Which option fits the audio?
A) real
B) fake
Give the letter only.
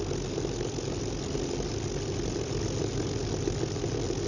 A